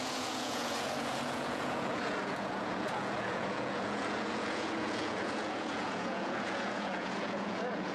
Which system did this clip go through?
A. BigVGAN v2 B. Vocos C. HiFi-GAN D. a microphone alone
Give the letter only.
B